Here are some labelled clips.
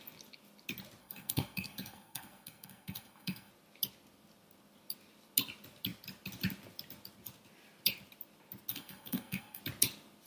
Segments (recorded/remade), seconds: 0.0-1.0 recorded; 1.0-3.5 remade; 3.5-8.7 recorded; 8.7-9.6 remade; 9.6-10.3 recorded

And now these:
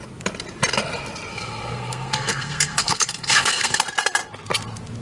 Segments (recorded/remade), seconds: 0.0-1.3 recorded; 1.3-3.8 remade; 3.8-5.0 recorded